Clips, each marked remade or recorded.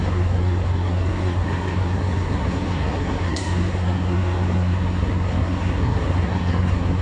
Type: remade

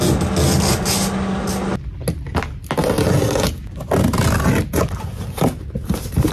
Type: recorded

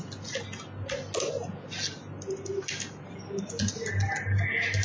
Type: recorded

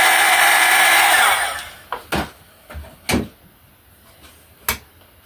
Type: recorded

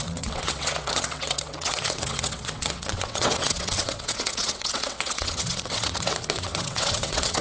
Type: remade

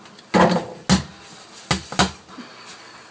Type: recorded